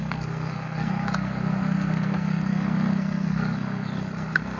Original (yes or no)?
no